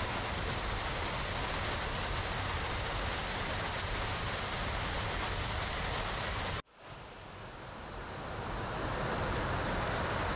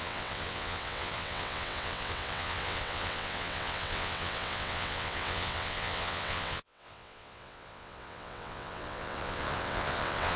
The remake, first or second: second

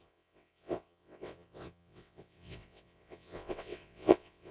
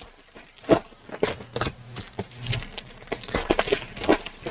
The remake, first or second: first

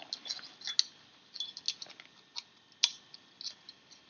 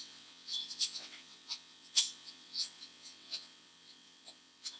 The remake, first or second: second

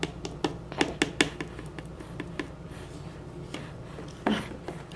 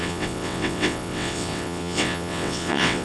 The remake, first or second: second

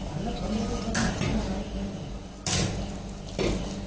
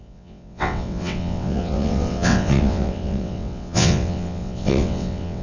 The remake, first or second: second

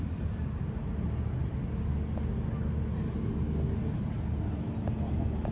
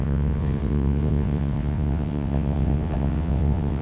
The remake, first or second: second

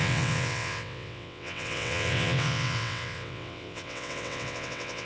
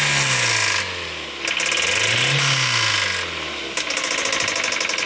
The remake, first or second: first